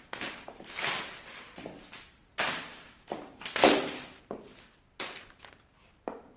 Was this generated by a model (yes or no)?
no